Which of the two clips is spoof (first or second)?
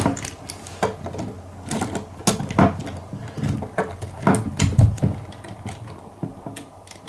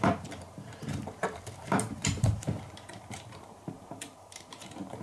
second